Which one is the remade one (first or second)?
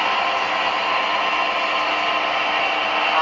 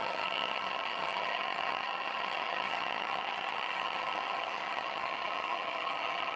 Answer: second